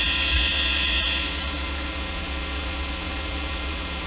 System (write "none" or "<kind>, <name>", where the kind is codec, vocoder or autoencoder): vocoder, Vocos